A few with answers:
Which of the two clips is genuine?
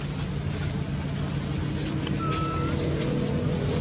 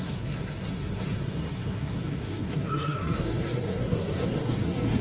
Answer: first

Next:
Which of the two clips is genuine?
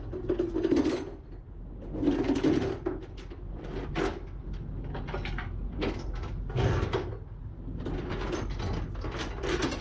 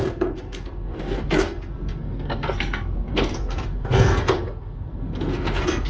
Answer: first